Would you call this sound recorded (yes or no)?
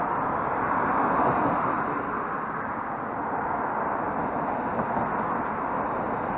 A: yes